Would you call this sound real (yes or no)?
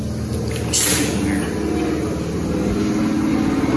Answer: yes